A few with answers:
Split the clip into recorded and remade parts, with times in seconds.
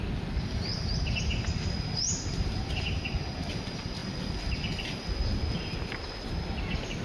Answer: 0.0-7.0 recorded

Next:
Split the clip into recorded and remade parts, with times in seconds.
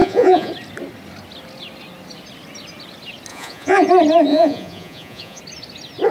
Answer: 0.0-0.5 remade; 0.5-3.3 recorded; 3.3-3.9 remade; 3.9-4.3 recorded; 4.3-5.4 remade; 5.4-6.1 recorded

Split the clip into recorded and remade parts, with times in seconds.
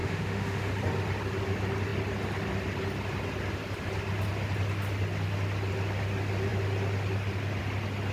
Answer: 0.0-0.7 remade; 0.7-8.1 recorded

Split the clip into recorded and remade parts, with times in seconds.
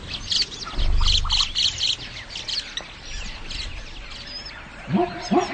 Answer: 0.0-5.5 recorded